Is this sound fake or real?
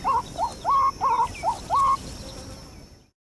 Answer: real